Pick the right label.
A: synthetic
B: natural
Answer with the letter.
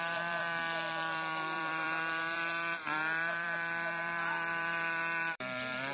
A